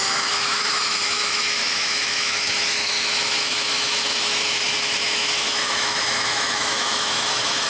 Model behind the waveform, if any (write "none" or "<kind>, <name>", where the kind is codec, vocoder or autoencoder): autoencoder, DAC-VAE